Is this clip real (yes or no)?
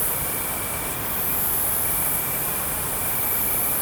yes